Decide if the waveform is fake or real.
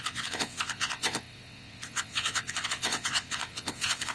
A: fake